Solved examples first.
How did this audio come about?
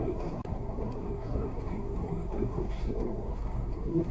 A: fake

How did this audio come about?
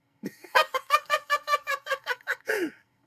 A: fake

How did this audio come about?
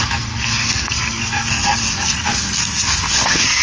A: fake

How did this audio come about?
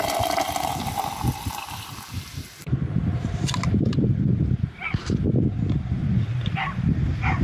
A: real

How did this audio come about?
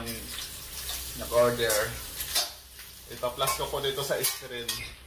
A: real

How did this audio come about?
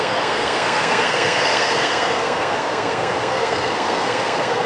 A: fake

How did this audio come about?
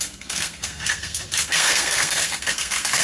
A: fake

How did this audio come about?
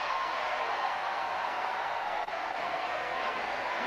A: fake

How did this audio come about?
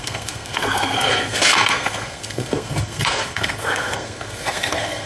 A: fake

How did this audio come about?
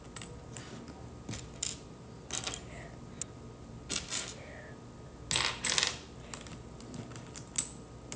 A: real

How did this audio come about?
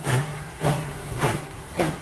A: fake